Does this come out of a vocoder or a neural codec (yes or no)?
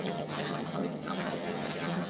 yes